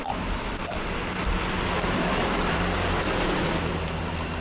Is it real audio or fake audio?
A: fake